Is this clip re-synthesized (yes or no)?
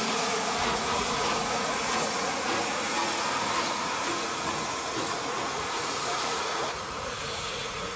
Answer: yes